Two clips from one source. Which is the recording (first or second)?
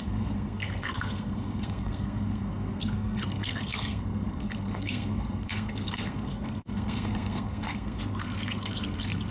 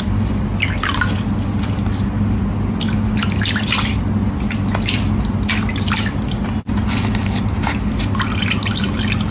second